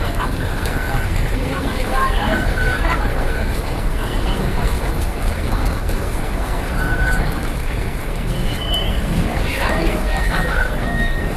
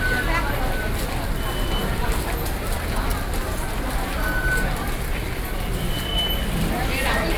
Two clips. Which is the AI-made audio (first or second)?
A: first